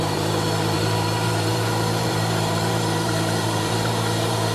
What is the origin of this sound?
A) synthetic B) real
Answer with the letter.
A